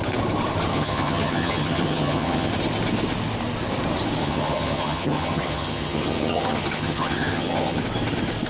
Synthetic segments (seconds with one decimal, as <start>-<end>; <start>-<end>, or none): 0.7-2.5; 4.2-7.8